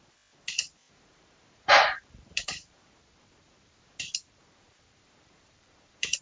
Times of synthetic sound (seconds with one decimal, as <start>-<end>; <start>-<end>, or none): 0.8-3.0; 4.4-6.2